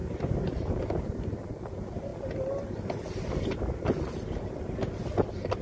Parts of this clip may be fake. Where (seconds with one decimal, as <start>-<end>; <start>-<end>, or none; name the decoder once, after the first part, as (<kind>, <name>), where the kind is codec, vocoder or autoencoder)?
none